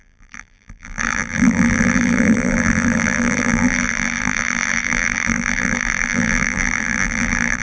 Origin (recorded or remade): remade